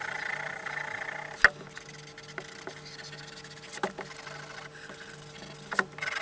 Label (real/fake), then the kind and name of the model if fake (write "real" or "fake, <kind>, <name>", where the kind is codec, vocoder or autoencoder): real